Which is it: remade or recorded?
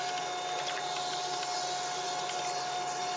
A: recorded